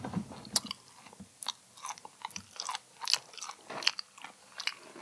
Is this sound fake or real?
real